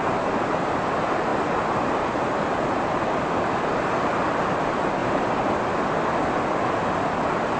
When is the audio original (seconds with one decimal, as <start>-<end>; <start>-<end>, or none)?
0.0-7.6